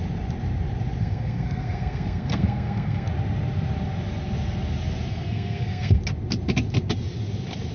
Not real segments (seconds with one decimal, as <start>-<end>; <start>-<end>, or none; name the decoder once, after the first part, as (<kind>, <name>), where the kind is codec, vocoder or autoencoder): 1.0-3.1 (codec, SNAC); 5.1-6.0